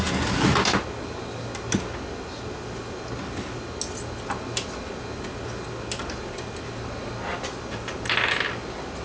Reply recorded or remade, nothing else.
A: recorded